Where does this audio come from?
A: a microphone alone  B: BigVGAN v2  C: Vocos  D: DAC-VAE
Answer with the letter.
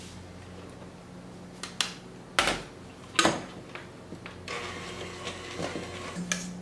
A